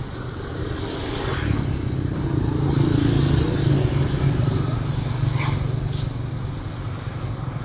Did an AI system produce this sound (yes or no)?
no